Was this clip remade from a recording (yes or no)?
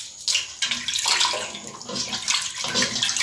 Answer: no